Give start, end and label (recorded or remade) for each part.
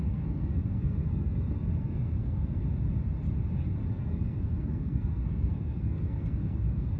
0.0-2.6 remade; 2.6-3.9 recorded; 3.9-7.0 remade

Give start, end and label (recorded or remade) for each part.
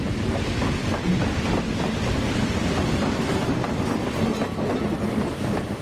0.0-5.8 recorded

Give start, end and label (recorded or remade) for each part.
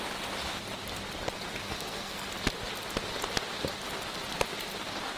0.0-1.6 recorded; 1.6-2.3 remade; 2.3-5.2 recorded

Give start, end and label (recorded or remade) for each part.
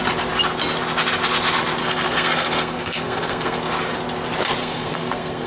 0.0-1.8 recorded; 1.8-3.6 remade; 3.6-4.6 recorded; 4.6-5.5 remade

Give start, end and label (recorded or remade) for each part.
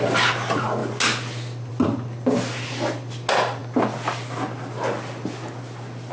0.0-6.1 recorded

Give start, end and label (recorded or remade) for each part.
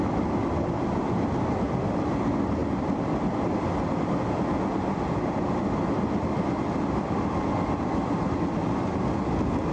0.0-9.7 recorded